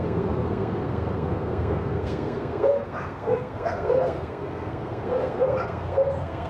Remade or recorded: remade